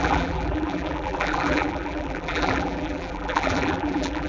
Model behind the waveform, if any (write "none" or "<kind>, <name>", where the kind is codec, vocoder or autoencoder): vocoder, BigVGAN v2